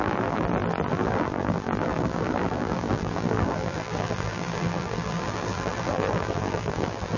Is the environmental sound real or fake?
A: fake